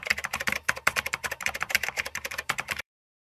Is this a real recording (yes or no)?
no